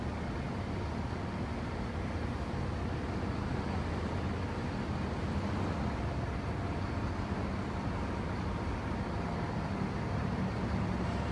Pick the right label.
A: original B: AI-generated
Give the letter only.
A